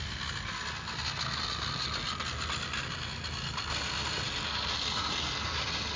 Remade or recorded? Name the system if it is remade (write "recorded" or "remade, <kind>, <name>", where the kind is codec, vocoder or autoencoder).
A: recorded